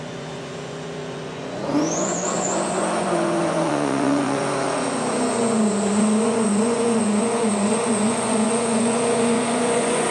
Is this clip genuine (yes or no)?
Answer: no